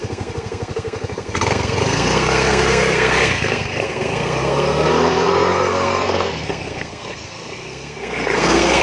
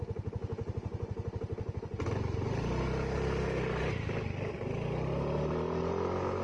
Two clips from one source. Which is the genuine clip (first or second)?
second